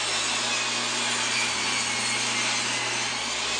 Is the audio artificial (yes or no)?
no